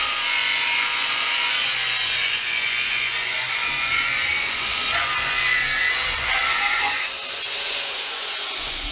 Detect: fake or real fake